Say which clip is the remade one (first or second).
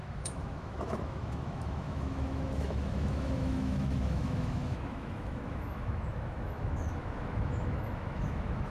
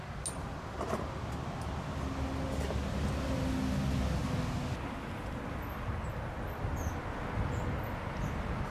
first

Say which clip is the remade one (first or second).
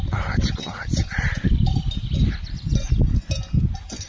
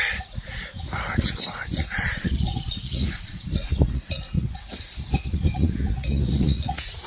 second